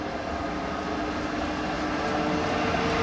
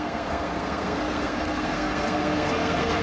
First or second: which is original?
first